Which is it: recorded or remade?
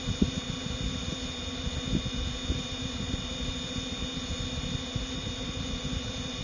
recorded